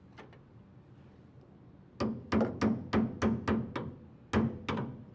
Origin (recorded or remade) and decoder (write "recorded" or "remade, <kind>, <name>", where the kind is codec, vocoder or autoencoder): recorded